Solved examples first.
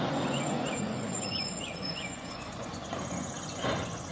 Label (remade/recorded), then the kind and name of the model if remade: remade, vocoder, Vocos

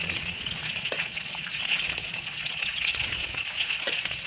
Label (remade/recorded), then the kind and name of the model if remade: remade, vocoder, Vocos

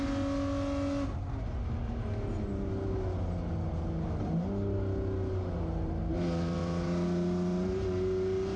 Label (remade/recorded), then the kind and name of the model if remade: recorded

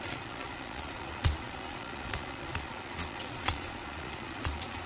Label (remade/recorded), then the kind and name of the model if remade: remade, vocoder, Vocos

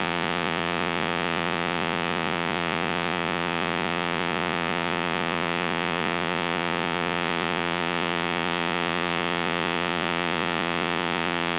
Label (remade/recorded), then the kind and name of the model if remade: remade, vocoder, Vocos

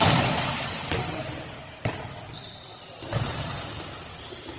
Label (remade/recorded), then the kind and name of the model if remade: recorded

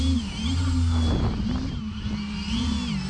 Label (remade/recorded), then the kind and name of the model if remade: recorded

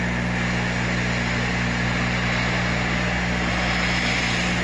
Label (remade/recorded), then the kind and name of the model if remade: recorded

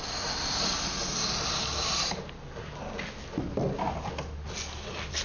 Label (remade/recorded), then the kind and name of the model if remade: recorded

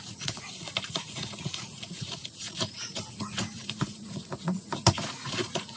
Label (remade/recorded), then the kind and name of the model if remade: remade, vocoder, Vocos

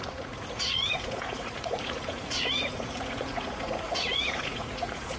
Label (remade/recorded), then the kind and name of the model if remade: remade, vocoder, Vocos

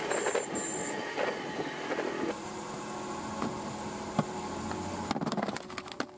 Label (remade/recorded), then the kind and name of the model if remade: recorded